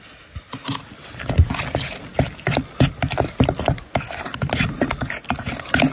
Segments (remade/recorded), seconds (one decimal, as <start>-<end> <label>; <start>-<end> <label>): 0.0-5.9 recorded